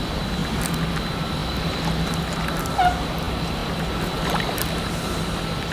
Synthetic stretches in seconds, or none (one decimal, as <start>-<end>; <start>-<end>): none